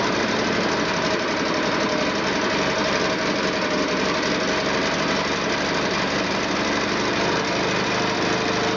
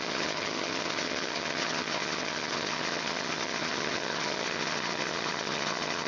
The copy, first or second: second